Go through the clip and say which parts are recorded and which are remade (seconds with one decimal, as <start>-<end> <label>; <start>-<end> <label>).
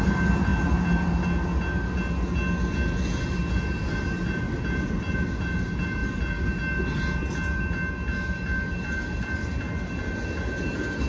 0.0-11.1 recorded